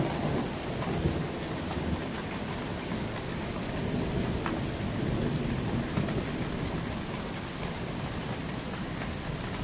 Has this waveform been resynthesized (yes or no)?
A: no